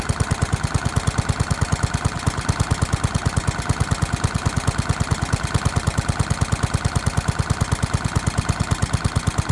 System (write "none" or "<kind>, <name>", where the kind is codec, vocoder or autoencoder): none